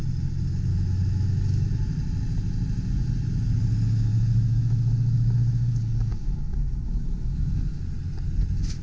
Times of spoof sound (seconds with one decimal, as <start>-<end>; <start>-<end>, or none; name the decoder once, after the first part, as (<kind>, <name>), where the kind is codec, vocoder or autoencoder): 0.7-1.7 (autoencoder, DAC-VAE); 4.1-7.8

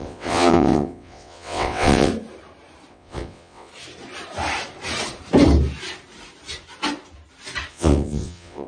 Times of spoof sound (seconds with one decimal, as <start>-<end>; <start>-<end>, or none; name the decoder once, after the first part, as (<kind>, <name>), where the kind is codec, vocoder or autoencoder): 0.0-2.1 (vocoder, WaveNeXt); 2.9-3.7; 7.7-8.7

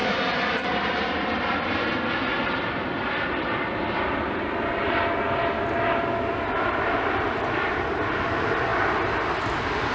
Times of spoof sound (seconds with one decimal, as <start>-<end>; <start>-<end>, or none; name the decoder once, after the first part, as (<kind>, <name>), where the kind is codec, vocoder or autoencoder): 0.0-2.1 (vocoder, BigVGAN v2)

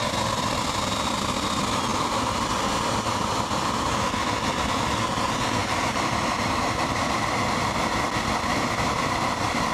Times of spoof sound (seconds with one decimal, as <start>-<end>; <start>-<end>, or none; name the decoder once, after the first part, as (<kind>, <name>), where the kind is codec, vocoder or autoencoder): 1.9-2.5 (vocoder, BigVGAN v2); 5.6-7.2

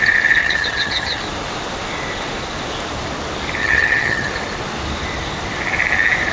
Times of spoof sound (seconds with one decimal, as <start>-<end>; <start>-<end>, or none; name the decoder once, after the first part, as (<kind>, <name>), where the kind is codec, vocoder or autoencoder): 0.4-1.2 (vocoder, HiFi-GAN); 3.6-4.3

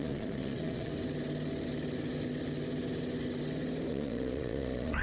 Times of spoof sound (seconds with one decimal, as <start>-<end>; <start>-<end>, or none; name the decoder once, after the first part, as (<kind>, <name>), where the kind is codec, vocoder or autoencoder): 0.0-0.9 (vocoder, Vocos); 3.9-5.0